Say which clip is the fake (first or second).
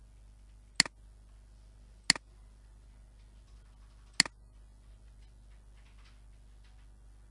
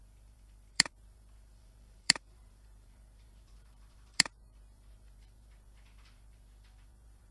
second